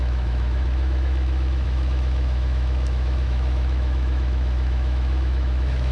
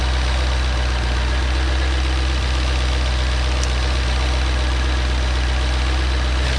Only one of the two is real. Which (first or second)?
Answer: second